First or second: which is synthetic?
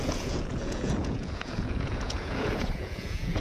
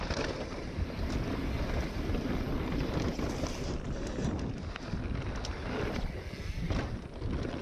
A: first